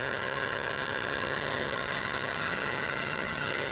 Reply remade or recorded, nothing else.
remade